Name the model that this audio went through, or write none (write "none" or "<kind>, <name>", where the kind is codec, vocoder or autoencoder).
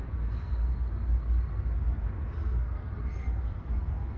codec, SNAC